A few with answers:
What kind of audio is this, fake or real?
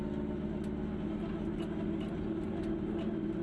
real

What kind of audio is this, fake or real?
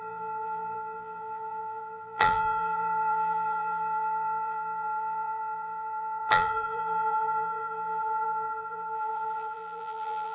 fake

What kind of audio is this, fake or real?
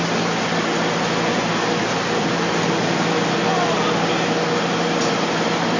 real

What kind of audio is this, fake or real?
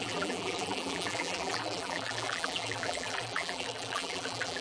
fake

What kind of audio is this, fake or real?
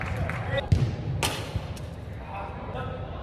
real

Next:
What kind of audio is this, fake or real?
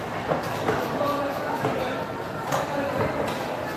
real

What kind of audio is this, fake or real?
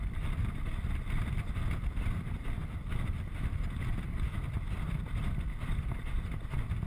real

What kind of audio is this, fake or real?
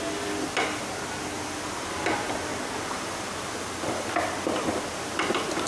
real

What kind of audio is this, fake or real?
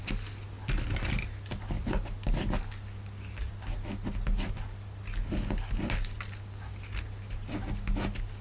real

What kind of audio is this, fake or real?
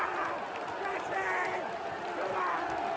real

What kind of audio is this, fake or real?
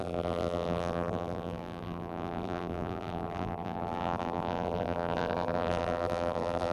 fake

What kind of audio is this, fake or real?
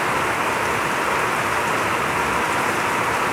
real